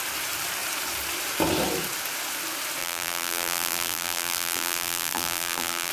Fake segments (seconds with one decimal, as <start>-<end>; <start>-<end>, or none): 2.8-5.9